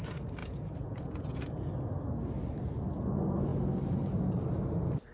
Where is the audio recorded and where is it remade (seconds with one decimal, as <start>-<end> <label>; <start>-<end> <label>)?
0.0-0.4 recorded; 0.4-1.7 remade; 1.7-5.1 recorded